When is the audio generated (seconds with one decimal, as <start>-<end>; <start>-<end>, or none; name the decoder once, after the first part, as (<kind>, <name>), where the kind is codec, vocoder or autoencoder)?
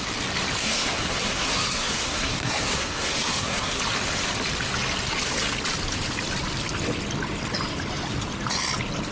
0.6-3.8 (codec, SNAC)